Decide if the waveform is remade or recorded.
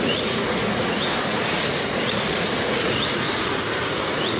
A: remade